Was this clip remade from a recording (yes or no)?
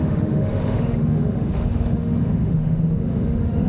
yes